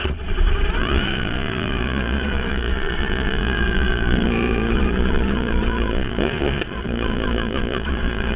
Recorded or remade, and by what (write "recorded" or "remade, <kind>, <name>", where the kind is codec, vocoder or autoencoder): remade, vocoder, Vocos